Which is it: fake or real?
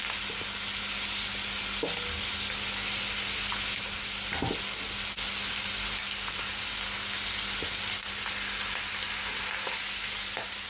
real